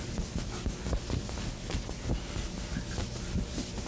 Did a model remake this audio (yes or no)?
no